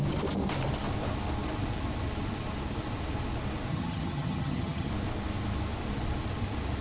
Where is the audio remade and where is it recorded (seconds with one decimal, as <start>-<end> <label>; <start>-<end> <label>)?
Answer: 0.0-3.7 recorded; 3.7-4.9 remade; 4.9-6.8 recorded